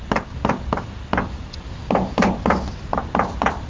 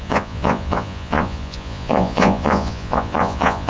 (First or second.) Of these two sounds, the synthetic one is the second